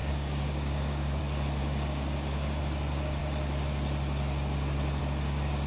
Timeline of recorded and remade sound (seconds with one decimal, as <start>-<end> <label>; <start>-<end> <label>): 0.0-1.2 remade; 1.2-1.6 recorded; 1.6-2.6 remade; 2.6-5.7 recorded